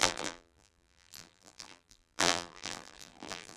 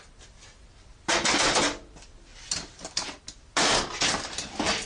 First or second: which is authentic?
second